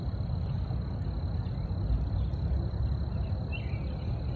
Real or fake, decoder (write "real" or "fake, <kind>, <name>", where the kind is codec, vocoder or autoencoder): real